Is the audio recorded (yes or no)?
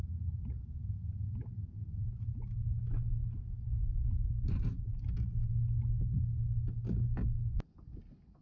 yes